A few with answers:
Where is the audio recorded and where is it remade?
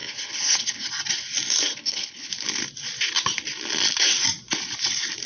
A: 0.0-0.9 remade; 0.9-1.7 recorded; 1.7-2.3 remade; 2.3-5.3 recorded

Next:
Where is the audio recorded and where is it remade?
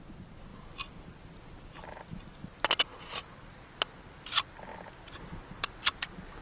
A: 0.0-6.4 recorded